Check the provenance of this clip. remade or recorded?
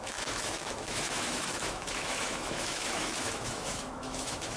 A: remade